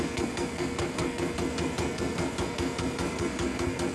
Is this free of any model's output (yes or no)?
no